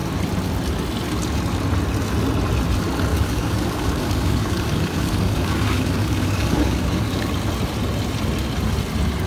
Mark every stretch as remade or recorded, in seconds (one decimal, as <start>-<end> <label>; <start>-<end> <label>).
0.0-3.1 recorded; 3.1-7.3 remade; 7.3-9.3 recorded